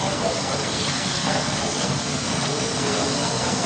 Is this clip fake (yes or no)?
yes